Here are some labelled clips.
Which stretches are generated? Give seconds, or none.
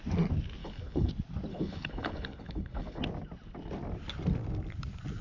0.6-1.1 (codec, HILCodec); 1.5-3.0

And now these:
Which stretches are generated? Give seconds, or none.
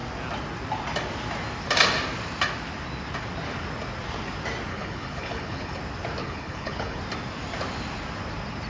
4.7-5.8 (codec, HILCodec); 6.2-7.0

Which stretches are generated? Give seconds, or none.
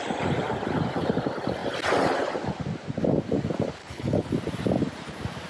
3.8-4.3 (codec, HILCodec)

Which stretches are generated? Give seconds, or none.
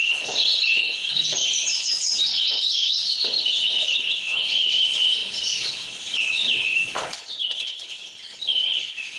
0.0-9.2 (codec, HILCodec)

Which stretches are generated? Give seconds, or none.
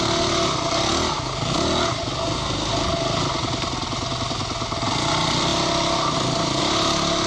none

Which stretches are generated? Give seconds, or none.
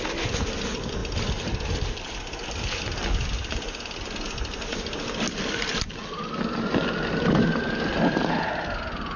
none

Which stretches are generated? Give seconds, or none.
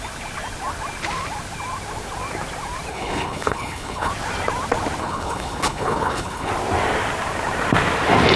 2.9-4.1 (codec, HILCodec); 5.0-6.5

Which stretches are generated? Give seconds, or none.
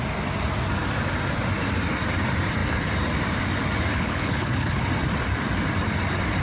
3.9-4.9 (codec, HILCodec)